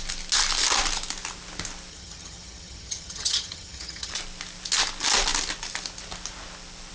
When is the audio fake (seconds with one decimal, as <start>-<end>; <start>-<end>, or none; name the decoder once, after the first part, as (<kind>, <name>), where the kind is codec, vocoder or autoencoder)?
1.9-4.1 (vocoder, HiFi-GAN)